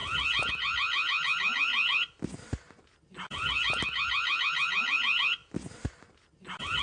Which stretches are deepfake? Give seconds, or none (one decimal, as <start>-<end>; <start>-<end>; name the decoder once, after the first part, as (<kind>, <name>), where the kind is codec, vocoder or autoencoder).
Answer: none